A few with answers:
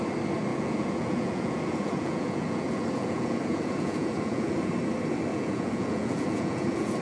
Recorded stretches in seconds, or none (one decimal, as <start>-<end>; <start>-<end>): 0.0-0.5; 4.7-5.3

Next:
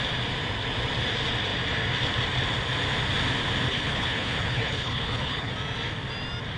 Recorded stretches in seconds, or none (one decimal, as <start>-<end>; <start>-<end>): 0.0-3.7; 5.5-6.6

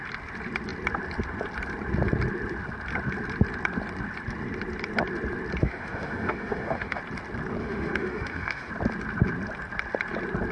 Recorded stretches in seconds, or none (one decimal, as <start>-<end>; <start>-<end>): 0.0-5.6; 7.0-7.6; 8.7-10.5